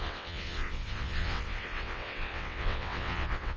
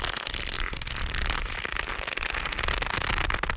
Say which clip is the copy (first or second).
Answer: first